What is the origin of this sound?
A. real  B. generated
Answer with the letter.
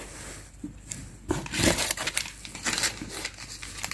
A